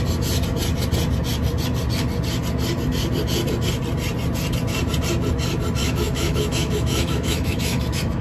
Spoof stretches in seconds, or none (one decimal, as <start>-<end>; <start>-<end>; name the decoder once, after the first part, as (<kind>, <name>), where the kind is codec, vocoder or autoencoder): 5.8-8.2 (autoencoder, DAC-VAE)